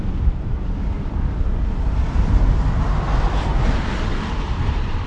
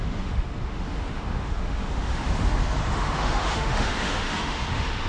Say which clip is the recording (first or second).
first